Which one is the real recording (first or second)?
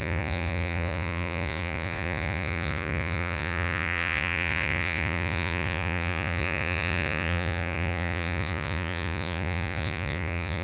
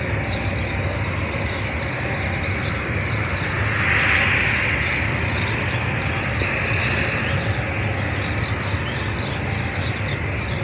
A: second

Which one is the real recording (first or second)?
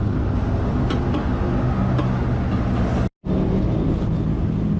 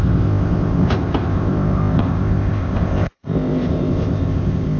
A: first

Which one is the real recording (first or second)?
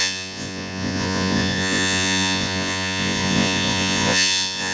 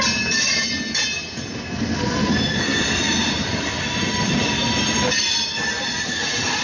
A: second